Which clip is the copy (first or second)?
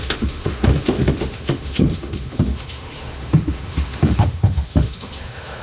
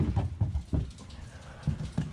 first